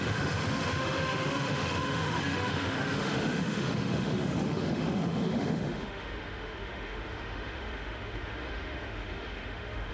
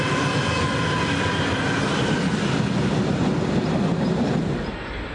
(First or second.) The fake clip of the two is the first